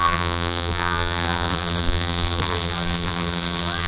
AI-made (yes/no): yes